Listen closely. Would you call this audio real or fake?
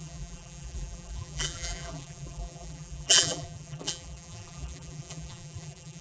fake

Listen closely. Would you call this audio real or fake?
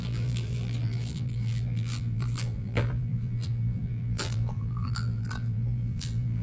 fake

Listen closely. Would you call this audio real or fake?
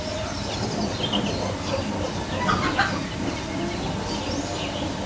real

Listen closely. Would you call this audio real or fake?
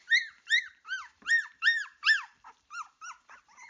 fake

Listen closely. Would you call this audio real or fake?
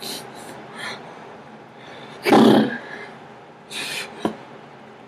real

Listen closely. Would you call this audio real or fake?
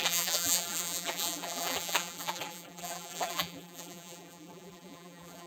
fake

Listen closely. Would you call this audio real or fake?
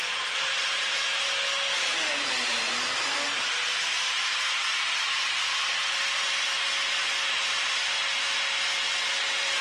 real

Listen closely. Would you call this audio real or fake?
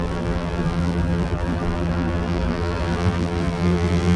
fake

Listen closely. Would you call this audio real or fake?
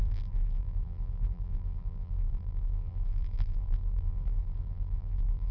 fake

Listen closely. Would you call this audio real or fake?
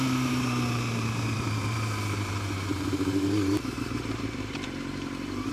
fake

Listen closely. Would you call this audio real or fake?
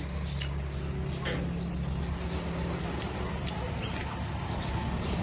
real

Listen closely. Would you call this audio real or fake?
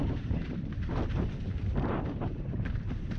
fake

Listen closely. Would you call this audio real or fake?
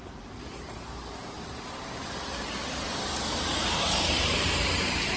fake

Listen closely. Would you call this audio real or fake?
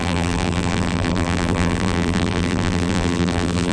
fake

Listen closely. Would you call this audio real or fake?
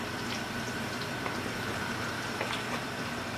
fake